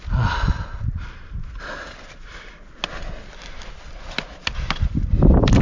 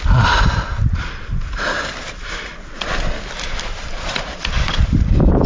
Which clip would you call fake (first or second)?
second